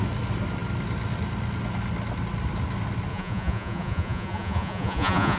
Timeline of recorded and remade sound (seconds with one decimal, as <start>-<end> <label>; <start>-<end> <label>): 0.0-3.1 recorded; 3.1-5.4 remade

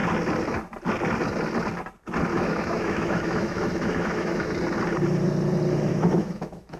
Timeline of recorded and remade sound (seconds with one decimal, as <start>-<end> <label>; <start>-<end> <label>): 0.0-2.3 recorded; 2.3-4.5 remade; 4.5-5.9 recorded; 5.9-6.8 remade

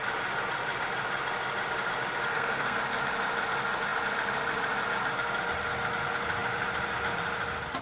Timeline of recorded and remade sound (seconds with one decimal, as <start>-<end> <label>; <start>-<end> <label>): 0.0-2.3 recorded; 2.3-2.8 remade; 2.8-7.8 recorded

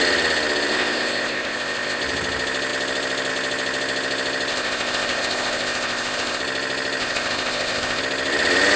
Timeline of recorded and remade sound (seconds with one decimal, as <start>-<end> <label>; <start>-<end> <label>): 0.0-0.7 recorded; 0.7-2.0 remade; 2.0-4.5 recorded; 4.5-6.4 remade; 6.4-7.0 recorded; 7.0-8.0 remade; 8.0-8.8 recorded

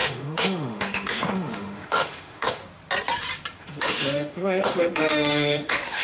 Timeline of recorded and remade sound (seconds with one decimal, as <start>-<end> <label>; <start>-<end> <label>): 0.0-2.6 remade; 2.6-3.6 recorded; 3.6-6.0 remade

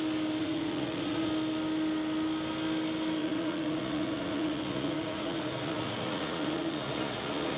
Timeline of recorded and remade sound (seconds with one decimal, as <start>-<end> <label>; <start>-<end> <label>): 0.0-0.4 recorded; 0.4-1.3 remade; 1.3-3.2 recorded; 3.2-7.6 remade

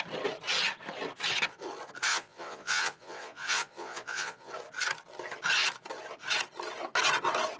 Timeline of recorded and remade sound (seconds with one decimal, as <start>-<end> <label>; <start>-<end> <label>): 0.0-2.1 recorded; 2.1-4.5 remade; 4.5-7.6 recorded